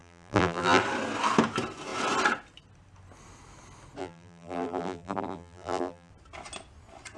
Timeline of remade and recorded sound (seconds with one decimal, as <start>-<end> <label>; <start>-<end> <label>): 0.0-0.8 remade; 0.8-4.0 recorded; 4.0-6.1 remade; 6.1-7.2 recorded

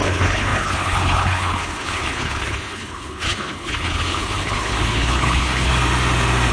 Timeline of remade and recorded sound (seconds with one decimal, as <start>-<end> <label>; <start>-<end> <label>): 0.0-5.7 remade; 5.7-6.5 recorded

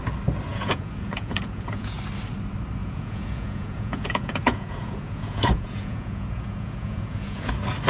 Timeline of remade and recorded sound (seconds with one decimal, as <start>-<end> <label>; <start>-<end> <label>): 0.0-0.5 recorded; 0.5-2.0 remade; 2.0-2.8 recorded; 2.8-7.5 remade; 7.5-7.9 recorded

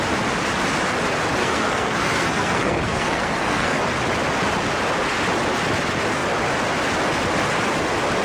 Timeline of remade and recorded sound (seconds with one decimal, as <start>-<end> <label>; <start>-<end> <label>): 0.0-1.4 recorded; 1.4-3.8 remade; 3.8-8.2 recorded

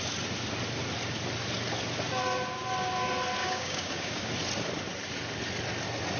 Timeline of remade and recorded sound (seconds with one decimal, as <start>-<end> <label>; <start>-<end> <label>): 0.0-3.4 recorded; 3.4-4.3 remade; 4.3-6.2 recorded

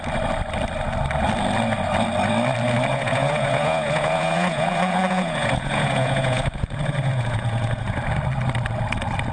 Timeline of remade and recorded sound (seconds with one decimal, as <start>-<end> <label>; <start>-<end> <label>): 0.0-2.9 recorded; 2.9-8.0 remade; 8.0-9.3 recorded